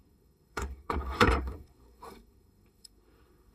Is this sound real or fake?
fake